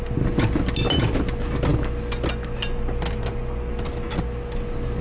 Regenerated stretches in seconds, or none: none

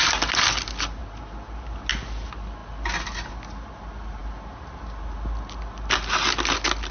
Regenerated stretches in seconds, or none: none

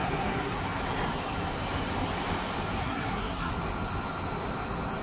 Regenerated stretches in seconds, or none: 0.0-0.6; 2.8-3.5

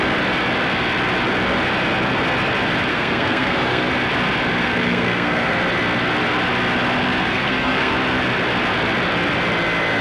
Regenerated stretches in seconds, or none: 2.9-3.9; 4.6-5.6; 7.2-7.9

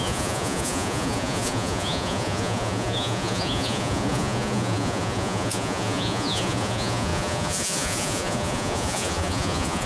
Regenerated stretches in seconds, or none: 0.0-9.9

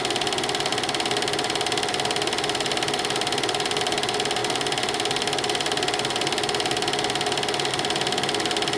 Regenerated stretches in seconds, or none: none

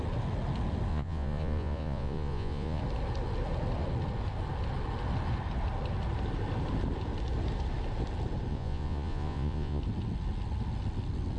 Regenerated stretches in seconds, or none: 0.9-2.8; 8.5-9.8